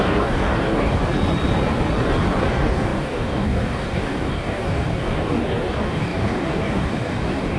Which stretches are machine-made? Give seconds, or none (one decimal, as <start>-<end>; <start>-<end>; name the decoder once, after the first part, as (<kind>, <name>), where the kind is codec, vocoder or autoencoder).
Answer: 0.0-1.0 (codec, DAC); 2.5-7.6